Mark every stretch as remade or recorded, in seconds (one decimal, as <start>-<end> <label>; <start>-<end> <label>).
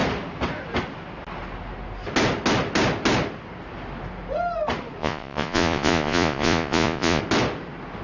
0.0-5.0 recorded; 5.0-7.2 remade; 7.2-8.0 recorded